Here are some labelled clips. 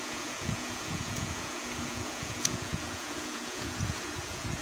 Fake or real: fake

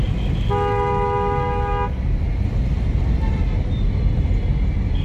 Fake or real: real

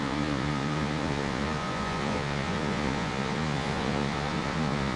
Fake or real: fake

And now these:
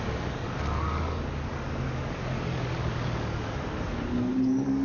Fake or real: fake